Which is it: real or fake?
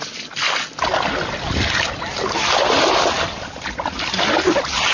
real